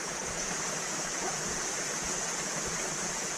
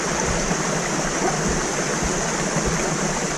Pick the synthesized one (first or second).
first